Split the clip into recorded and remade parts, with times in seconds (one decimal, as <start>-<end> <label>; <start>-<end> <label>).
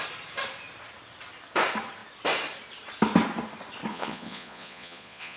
0.0-3.9 recorded; 3.9-5.4 remade